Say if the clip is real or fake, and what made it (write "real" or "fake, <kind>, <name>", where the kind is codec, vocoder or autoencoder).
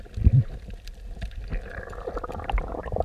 real